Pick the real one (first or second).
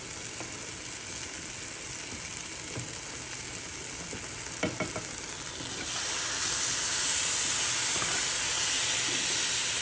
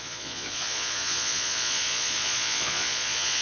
first